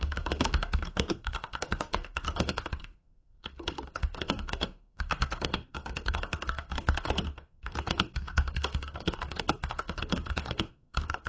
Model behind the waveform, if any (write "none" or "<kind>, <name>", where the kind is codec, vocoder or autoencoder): codec, SNAC